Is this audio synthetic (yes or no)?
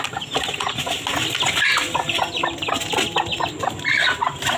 no